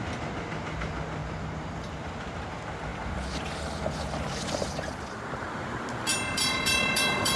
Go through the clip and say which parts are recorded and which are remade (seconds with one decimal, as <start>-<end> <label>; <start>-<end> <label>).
0.0-1.2 recorded; 1.2-1.9 remade; 1.9-2.9 recorded; 2.9-5.5 remade; 5.5-6.1 recorded; 6.1-7.4 remade